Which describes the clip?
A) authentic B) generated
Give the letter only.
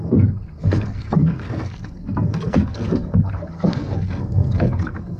B